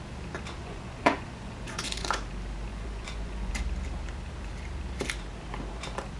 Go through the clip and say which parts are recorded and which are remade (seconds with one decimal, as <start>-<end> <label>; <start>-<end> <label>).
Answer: 0.0-0.6 recorded; 0.6-2.1 remade; 2.1-2.7 recorded; 2.7-3.5 remade; 3.5-6.2 recorded